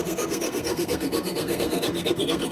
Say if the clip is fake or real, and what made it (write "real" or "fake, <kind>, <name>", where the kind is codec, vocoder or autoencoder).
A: fake, codec, SNAC